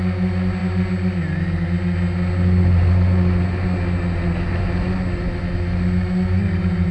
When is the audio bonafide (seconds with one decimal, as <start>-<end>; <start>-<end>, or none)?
0.0-6.9